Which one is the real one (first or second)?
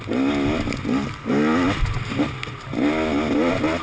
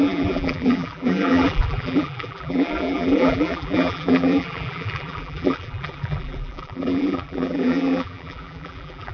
first